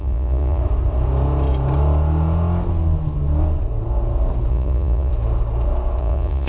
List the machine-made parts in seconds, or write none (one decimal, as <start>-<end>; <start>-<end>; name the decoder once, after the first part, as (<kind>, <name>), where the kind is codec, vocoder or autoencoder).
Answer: 0.0-0.6 (vocoder, Vocos); 4.5-5.1; 6.0-6.5